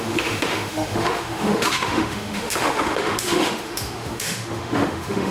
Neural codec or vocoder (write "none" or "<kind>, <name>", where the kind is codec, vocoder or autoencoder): autoencoder, DAC-VAE